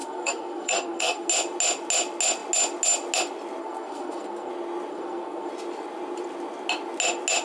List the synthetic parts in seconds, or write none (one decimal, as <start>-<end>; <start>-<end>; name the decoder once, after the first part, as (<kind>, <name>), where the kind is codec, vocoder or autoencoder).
0.0-1.3 (codec, SNAC); 3.6-4.5; 4.9-5.5